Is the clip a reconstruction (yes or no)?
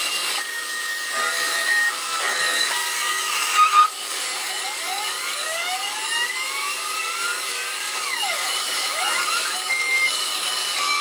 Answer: yes